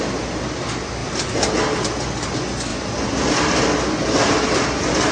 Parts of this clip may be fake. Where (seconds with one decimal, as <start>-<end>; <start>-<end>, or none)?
none